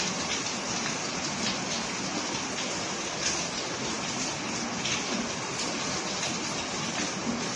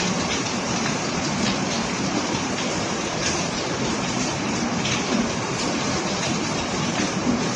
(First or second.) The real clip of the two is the first